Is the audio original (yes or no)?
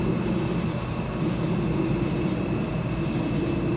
yes